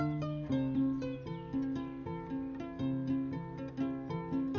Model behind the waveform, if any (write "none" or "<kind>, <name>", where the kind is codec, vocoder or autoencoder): none